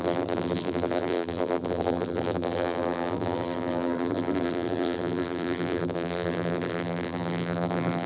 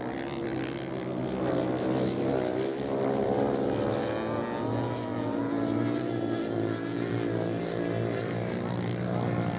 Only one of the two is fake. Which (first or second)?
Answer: first